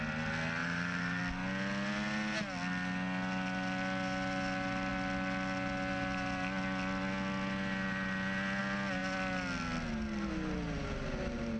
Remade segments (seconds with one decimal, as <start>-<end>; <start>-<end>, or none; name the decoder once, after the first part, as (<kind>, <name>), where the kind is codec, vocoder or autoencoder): 0.6-1.2 (vocoder, BigVGAN v2)